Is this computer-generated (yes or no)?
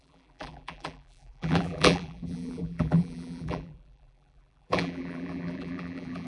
yes